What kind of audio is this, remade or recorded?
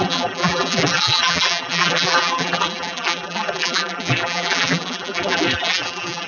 remade